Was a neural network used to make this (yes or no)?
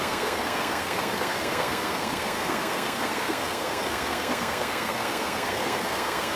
yes